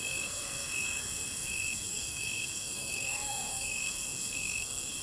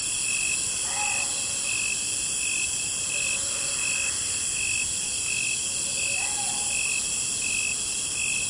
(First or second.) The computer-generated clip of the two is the first